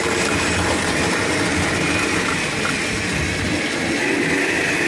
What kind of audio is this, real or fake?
real